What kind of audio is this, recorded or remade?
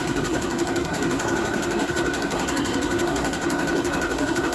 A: remade